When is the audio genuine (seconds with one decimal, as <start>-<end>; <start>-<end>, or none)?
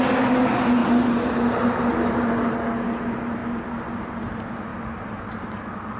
0.0-6.0